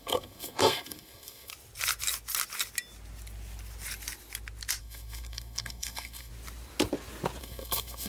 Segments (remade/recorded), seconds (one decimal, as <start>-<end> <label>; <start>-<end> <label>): 0.0-1.5 remade; 1.5-4.8 recorded; 4.8-6.3 remade; 6.3-7.4 recorded; 7.4-8.1 remade